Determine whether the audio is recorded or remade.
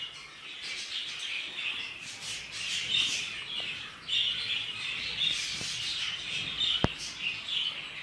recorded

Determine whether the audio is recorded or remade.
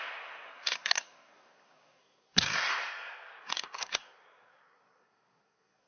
remade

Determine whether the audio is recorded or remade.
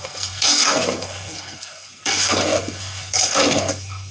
remade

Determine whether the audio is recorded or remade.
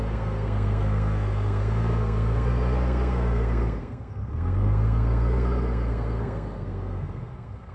remade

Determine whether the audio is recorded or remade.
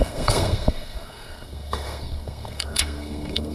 remade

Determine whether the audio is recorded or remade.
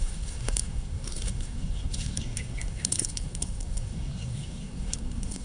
remade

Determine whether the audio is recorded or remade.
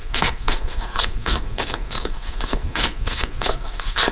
remade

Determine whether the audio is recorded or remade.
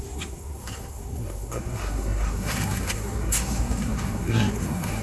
remade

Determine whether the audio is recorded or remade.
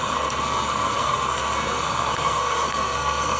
remade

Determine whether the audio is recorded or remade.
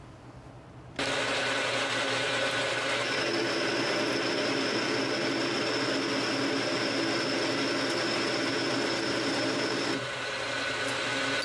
recorded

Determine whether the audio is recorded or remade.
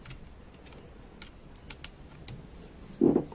recorded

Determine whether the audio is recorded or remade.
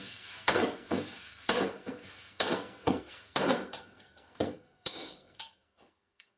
remade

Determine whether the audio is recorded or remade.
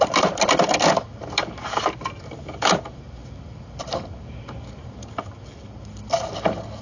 recorded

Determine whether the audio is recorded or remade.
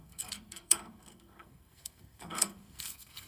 remade